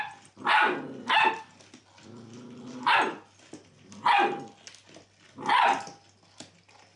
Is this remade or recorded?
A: recorded